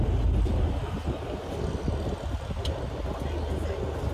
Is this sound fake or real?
real